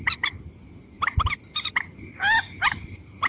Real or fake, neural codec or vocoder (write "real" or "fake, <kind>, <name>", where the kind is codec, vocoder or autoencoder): real